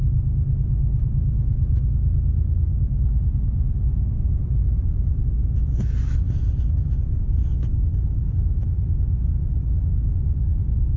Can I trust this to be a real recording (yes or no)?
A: yes